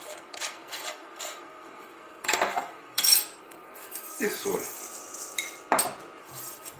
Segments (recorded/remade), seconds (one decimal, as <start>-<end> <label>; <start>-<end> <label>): 0.0-4.8 remade; 4.8-6.2 recorded; 6.2-6.8 remade